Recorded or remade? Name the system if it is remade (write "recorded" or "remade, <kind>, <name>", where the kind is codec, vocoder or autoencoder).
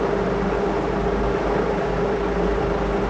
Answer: recorded